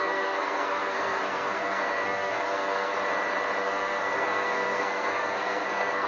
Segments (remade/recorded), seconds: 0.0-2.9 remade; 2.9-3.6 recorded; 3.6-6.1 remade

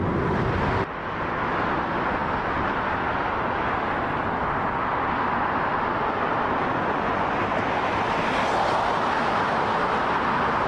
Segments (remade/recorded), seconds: 0.0-6.6 recorded; 6.6-7.3 remade; 7.3-10.7 recorded

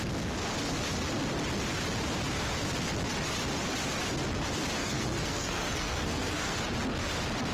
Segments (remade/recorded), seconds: 0.0-4.8 recorded; 4.8-6.6 remade; 6.6-7.5 recorded

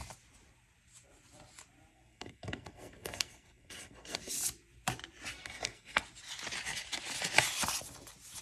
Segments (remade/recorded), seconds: 0.0-1.9 recorded; 1.9-4.3 remade; 4.3-5.3 recorded; 5.3-6.0 remade; 6.0-8.4 recorded

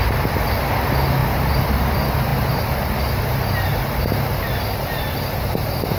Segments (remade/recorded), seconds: 0.0-1.2 recorded; 1.2-1.9 remade; 1.9-2.3 recorded; 2.3-6.0 remade

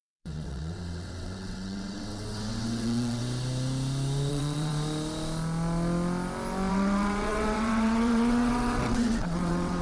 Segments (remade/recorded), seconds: 0.0-3.2 remade; 3.2-4.3 recorded; 4.3-4.7 remade; 4.7-6.7 recorded; 6.7-9.8 remade

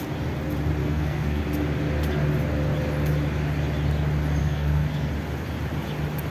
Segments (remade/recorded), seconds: 0.0-0.8 recorded; 0.8-1.4 remade; 1.4-4.4 recorded; 4.4-5.1 remade; 5.1-6.3 recorded

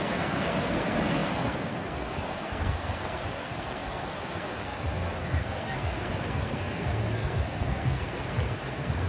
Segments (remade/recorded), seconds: 0.0-9.1 remade